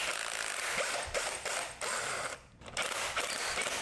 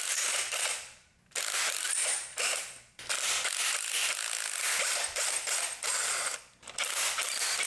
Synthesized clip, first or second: first